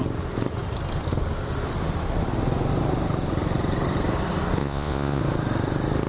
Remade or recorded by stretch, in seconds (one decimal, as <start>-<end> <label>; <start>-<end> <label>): 0.0-4.6 recorded; 4.6-5.2 remade; 5.2-6.1 recorded